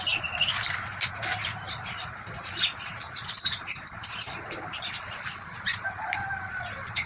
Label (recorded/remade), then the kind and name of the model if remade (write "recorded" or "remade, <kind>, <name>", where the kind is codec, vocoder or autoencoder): remade, vocoder, BigVGAN v2